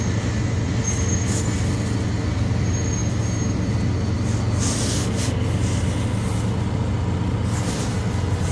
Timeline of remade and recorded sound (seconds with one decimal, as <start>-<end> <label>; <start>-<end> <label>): 0.0-8.5 recorded